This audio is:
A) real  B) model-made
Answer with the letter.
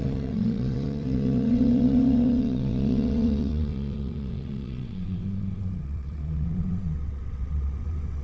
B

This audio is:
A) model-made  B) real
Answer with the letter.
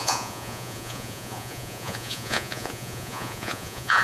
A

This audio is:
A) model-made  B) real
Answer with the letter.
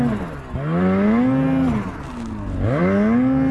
B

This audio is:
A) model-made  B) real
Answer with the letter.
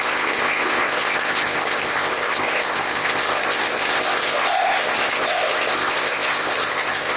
A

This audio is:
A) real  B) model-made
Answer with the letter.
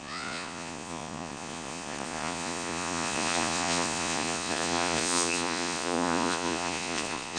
B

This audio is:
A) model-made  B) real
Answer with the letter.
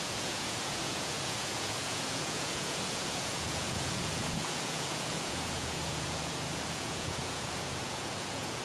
A